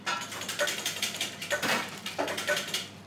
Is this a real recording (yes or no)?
no